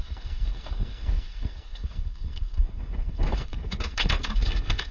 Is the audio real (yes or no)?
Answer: no